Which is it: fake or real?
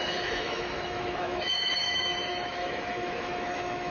fake